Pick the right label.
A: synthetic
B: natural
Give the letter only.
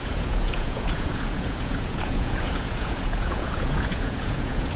A